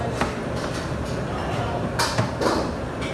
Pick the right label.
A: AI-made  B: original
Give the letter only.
B